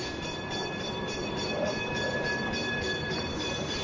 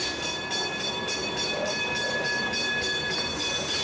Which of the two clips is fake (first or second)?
first